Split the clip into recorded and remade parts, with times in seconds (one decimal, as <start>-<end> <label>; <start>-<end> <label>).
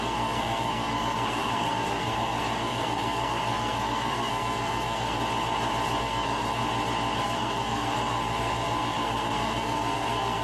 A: 0.0-5.2 remade; 5.2-6.0 recorded; 6.0-6.6 remade; 6.6-7.2 recorded; 7.2-10.4 remade